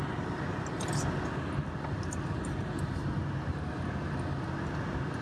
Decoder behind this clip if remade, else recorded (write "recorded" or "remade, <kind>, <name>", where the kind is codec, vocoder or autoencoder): recorded